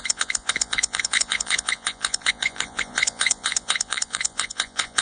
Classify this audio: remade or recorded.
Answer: remade